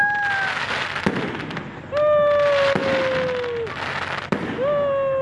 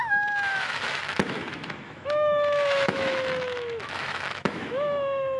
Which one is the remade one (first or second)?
second